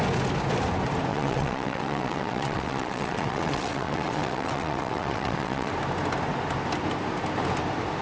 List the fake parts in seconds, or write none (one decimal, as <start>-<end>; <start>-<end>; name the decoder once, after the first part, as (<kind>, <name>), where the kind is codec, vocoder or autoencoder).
1.1-5.7 (vocoder, WaveNeXt)